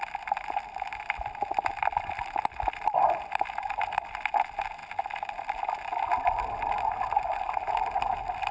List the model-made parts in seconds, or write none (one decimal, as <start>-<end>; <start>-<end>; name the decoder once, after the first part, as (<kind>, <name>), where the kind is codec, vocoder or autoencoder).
none

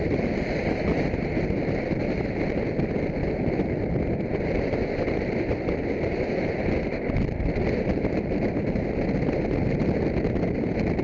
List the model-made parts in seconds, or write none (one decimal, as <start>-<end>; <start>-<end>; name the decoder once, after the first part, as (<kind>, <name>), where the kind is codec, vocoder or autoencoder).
3.2-4.6 (vocoder, BigVGAN v2); 7.6-8.6

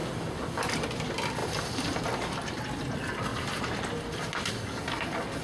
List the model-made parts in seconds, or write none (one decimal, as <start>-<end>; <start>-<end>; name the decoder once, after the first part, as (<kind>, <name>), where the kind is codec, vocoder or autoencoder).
0.0-0.6 (vocoder, BigVGAN v2); 1.4-2.0; 3.3-4.7

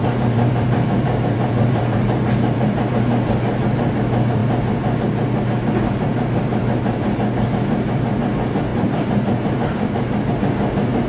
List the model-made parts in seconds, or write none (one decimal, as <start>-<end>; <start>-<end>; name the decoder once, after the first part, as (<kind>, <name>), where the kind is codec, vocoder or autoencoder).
0.0-2.9 (vocoder, BigVGAN v2); 6.1-6.7; 8.7-10.3

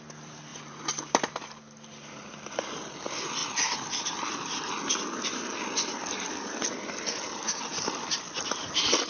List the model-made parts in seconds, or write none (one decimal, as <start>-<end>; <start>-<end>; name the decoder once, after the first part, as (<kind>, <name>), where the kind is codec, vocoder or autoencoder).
0.5-2.9 (vocoder, BigVGAN v2)